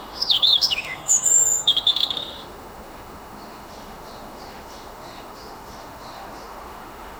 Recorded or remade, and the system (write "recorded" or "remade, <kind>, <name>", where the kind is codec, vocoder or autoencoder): remade, autoencoder, DAC-VAE